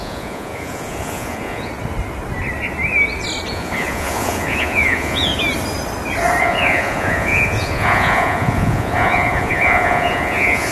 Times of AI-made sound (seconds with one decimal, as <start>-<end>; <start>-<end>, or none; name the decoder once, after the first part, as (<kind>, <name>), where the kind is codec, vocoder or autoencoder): 0.0-1.7 (vocoder, Vocos); 3.5-5.3; 6.4-10.7